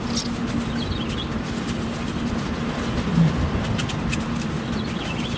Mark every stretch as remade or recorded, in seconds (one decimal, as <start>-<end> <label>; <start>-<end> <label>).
0.0-5.4 recorded